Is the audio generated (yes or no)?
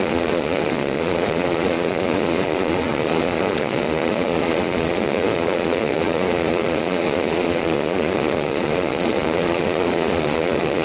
yes